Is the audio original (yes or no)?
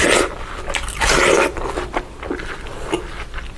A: yes